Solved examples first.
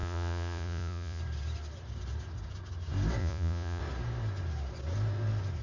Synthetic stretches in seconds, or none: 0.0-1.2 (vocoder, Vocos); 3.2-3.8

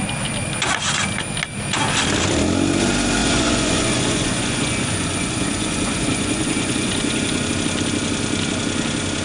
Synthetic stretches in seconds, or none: 3.2-7.5 (vocoder, Vocos)

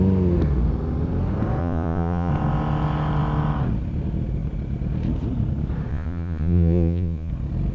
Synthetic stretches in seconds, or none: 1.6-2.3 (vocoder, Vocos); 5.9-7.3

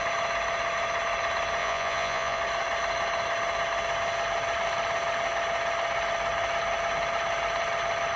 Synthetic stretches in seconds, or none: 1.6-2.4 (vocoder, Vocos)

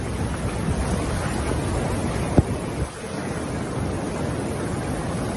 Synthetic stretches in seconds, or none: none